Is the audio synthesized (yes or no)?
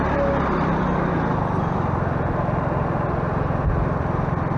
no